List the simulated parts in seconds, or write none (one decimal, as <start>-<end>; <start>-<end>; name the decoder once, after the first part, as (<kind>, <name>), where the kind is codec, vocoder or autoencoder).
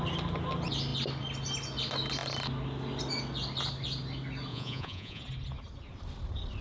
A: 4.5-5.2 (vocoder, Vocos)